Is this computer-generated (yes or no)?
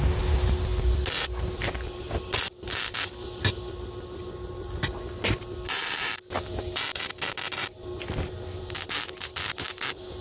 no